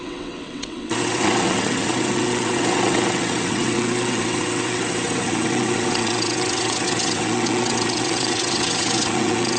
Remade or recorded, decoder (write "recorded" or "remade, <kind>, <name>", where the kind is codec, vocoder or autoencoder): remade, vocoder, WaveNeXt